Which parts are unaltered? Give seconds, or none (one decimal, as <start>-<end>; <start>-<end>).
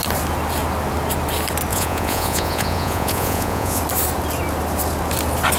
0.0-1.7; 3.8-5.6